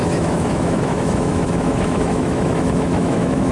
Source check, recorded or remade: remade